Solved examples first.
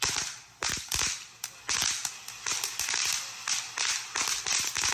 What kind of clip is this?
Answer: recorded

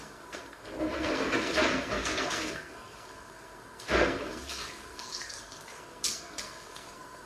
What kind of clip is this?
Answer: remade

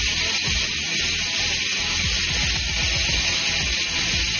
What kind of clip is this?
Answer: recorded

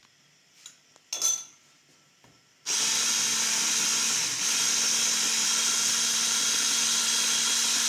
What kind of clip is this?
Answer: recorded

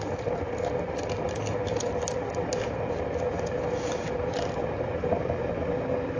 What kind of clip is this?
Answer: recorded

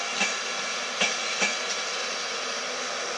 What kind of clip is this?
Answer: recorded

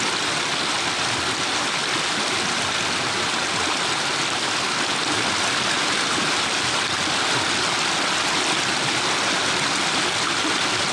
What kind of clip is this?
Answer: recorded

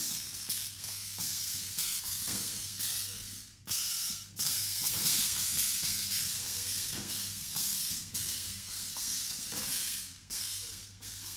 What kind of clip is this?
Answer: remade